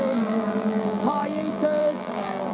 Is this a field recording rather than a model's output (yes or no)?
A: no